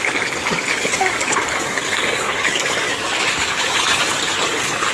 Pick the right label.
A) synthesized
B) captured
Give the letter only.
A